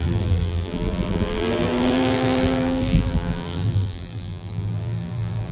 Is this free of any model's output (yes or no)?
no